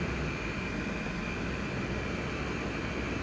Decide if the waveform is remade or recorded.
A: remade